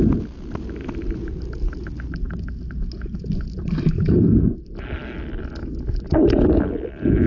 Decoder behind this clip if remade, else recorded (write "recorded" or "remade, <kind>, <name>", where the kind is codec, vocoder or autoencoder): recorded